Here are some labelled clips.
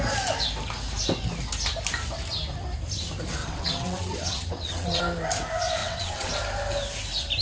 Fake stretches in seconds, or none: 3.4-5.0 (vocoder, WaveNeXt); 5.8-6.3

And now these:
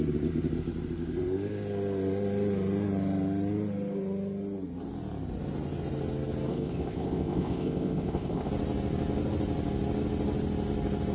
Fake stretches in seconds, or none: 6.5-8.5 (codec, ZipCodec)

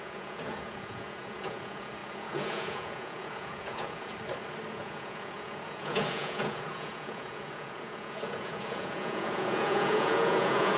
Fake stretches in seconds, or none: 0.0-4.1 (vocoder, Vocos); 4.7-10.8

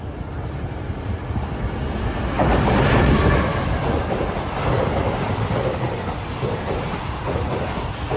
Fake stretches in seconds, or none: 3.5-7.3 (vocoder, BigVGAN v2)

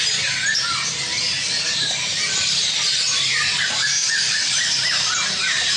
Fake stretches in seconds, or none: 2.1-3.3 (vocoder, BigVGAN v2); 4.0-5.8